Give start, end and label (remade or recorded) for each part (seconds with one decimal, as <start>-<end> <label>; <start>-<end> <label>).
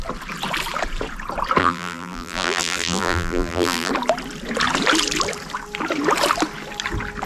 0.0-1.6 recorded; 1.6-3.9 remade; 3.9-7.3 recorded